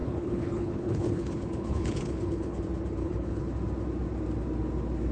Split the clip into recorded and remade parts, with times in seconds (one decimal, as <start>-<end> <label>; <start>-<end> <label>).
0.0-2.6 remade; 2.6-3.0 recorded; 3.0-3.5 remade; 3.5-5.1 recorded